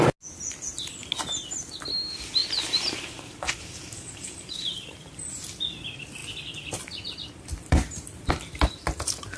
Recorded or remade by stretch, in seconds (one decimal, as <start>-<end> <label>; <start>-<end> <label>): 0.0-2.4 recorded; 2.4-5.0 remade; 5.0-9.4 recorded